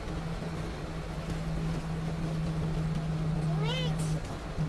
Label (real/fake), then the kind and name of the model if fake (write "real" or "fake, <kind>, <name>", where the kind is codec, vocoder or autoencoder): real